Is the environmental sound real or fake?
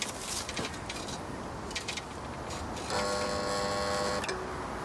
real